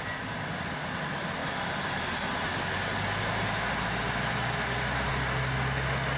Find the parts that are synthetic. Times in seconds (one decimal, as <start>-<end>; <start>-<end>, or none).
none